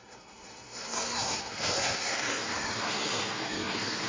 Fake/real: fake